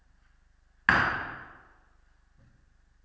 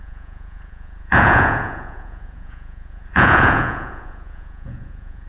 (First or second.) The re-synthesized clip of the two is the second